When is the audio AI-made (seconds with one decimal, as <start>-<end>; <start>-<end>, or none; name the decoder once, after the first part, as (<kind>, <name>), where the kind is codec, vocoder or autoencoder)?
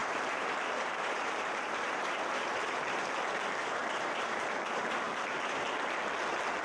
0.0-3.2 (vocoder, BigVGAN v2); 3.8-5.6